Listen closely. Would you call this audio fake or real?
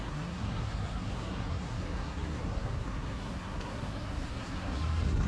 fake